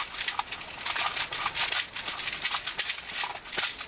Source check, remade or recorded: recorded